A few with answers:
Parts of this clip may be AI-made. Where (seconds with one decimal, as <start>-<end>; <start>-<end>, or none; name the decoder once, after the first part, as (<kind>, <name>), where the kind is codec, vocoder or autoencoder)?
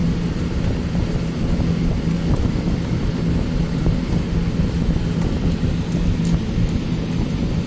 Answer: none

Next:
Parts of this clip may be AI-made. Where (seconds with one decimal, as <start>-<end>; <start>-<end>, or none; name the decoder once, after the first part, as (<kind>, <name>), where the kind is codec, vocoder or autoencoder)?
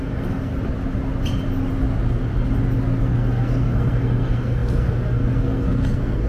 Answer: 0.0-0.5 (codec, SNAC); 3.0-6.3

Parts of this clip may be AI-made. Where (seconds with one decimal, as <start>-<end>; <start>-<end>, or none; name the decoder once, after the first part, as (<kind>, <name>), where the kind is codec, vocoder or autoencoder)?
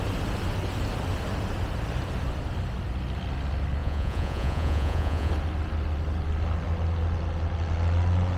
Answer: 3.8-5.3 (vocoder, Vocos)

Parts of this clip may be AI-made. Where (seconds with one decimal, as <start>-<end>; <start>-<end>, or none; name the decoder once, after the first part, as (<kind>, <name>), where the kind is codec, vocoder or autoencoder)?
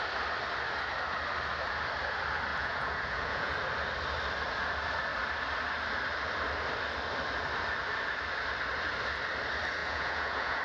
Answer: 2.5-3.5 (vocoder, Vocos); 9.8-10.6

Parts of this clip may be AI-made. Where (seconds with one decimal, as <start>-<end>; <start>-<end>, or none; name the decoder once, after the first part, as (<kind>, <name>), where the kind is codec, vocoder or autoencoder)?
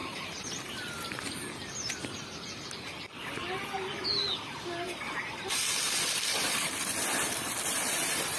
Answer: 0.0-8.4 (vocoder, BigVGAN v2)